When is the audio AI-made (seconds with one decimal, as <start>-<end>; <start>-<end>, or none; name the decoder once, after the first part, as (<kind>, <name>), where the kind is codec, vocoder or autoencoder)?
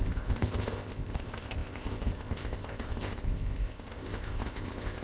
0.0-5.0 (codec, ZipCodec)